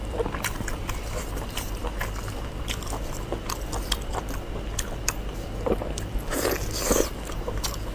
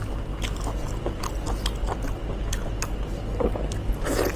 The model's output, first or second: first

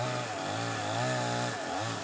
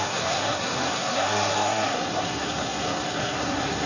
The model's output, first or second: second